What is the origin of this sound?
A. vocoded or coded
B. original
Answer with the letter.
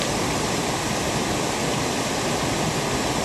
B